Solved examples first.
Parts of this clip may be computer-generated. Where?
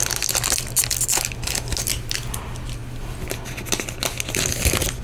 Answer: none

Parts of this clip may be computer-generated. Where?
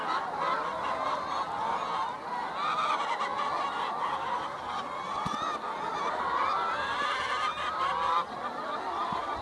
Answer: none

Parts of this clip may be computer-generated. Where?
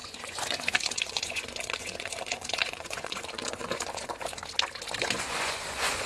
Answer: 0.0-4.4 (vocoder, Vocos); 5.0-6.1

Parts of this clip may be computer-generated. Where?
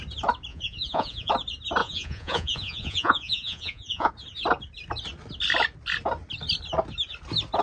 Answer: 0.5-1.3 (vocoder, Vocos); 1.8-4.1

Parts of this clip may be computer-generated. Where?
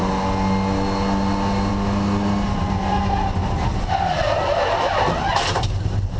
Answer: none